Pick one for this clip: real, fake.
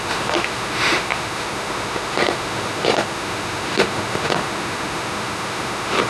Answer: fake